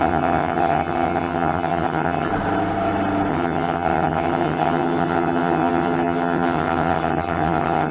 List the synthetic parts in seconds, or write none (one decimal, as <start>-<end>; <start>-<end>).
0.0-2.3; 3.3-7.9